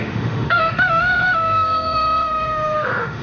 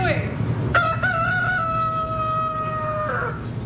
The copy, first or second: first